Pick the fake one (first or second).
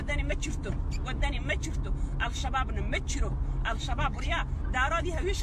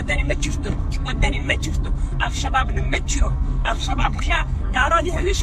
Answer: second